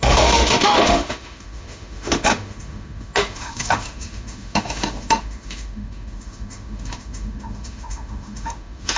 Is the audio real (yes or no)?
no